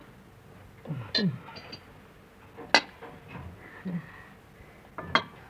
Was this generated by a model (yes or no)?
no